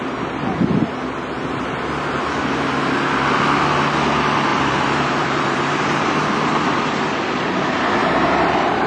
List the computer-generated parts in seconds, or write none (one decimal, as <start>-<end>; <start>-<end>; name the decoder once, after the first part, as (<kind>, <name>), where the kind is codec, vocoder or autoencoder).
4.5-6.0 (vocoder, BigVGAN v2); 8.0-8.9